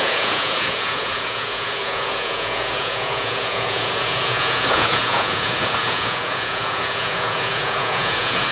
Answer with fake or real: fake